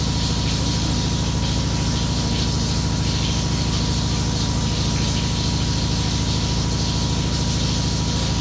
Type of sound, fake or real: real